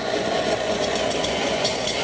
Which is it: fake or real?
fake